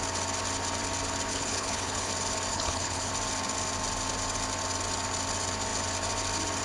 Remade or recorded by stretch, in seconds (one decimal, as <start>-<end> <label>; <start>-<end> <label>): 0.0-1.3 recorded; 1.3-2.1 remade; 2.1-2.5 recorded; 2.5-3.1 remade; 3.1-6.6 recorded